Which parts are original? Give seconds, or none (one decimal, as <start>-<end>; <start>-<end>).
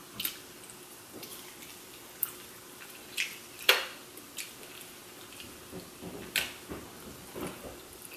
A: 0.0-1.3; 3.7-8.2